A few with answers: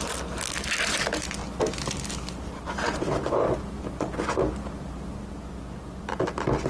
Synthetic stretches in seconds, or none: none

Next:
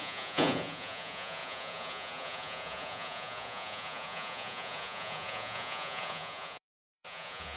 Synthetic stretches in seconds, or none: 0.0-7.6 (vocoder, Vocos)